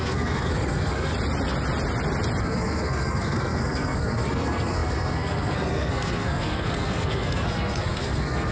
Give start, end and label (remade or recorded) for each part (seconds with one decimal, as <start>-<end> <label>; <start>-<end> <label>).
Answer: 0.0-1.1 remade; 1.1-2.4 recorded; 2.4-8.5 remade

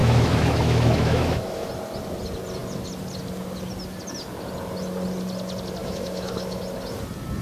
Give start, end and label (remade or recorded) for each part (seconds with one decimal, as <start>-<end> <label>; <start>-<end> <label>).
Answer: 0.0-1.7 remade; 1.7-5.8 recorded; 5.8-6.6 remade; 6.6-7.4 recorded

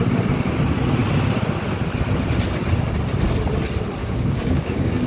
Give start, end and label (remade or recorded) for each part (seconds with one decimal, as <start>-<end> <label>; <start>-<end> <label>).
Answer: 0.0-4.0 recorded; 4.0-5.1 remade

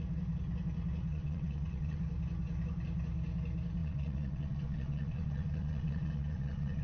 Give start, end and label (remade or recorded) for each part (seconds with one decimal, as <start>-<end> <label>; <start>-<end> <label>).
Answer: 0.0-1.1 recorded; 1.1-2.0 remade; 2.0-3.8 recorded; 3.8-6.8 remade

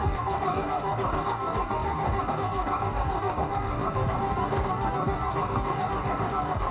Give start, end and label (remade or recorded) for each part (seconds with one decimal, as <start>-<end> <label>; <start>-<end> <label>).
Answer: 0.0-6.7 remade

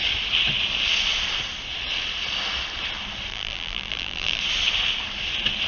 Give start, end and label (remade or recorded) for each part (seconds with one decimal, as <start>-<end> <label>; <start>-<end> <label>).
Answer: 0.0-3.3 recorded; 3.3-4.4 remade; 4.4-5.7 recorded

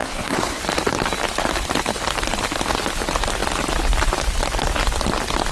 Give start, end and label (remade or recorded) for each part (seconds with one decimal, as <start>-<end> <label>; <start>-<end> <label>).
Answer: 0.0-0.6 remade; 0.6-5.5 recorded